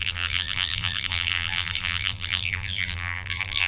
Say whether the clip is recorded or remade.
remade